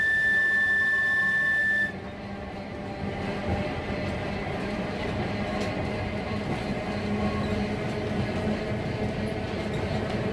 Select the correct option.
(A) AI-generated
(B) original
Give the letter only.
B